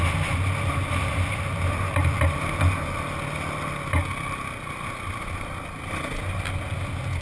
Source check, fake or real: real